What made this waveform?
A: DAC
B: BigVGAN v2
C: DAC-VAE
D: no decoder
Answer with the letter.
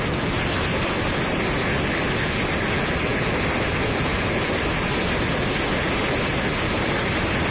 D